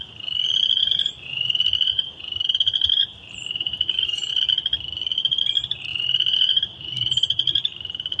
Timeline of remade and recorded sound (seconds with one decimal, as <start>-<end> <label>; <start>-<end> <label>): 0.0-0.8 recorded; 0.8-4.4 remade; 4.4-5.9 recorded; 5.9-8.2 remade

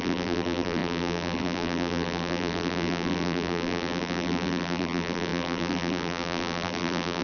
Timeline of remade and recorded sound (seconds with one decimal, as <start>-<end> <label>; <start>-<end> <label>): 0.0-7.2 remade